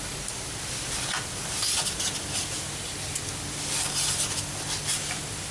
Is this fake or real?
real